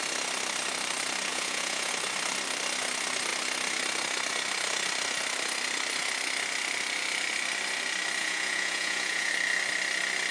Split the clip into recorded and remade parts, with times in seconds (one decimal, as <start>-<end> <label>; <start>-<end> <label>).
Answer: 0.0-1.3 recorded; 1.3-1.9 remade; 1.9-8.2 recorded; 8.2-9.3 remade; 9.3-10.3 recorded